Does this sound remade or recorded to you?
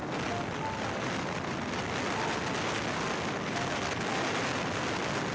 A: recorded